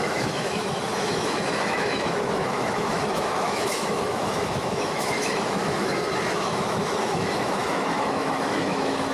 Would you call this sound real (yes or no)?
no